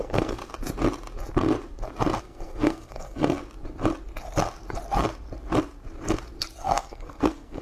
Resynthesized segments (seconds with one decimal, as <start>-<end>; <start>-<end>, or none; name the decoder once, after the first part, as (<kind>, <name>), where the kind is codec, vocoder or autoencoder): 0.0-0.4 (codec, SNAC); 2.2-3.4; 6.6-7.6